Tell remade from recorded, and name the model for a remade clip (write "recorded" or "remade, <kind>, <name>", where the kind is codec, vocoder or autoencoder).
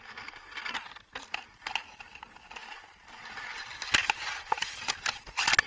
recorded